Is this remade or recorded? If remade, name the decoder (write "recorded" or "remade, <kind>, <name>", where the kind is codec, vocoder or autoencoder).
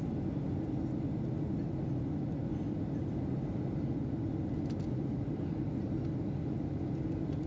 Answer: recorded